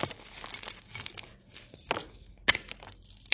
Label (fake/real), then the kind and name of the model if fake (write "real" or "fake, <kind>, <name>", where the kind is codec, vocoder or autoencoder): real